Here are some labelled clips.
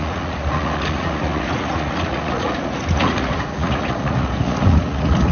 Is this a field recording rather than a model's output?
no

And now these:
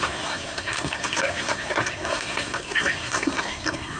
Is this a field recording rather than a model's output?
no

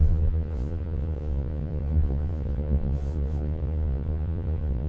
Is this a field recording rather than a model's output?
no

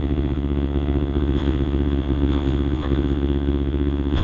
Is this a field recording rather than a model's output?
no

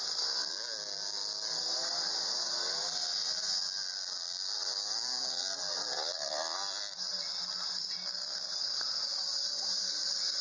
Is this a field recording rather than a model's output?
yes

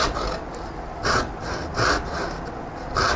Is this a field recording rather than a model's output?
yes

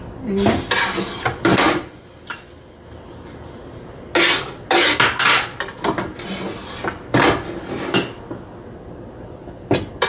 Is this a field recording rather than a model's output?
yes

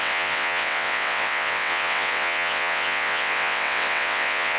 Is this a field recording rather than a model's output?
no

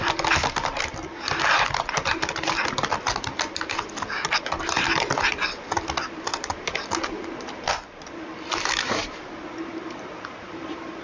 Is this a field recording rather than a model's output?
no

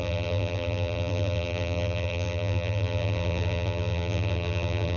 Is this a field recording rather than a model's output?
no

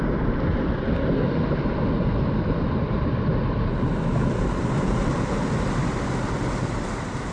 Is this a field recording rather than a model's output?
yes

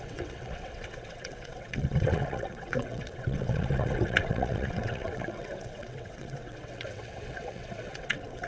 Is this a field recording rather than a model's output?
no